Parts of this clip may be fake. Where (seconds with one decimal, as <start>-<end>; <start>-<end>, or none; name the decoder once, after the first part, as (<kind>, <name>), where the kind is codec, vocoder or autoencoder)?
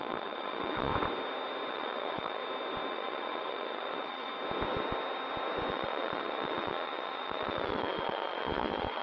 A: 0.0-0.9 (vocoder, Vocos); 1.7-2.4; 2.9-4.3; 5.7-9.0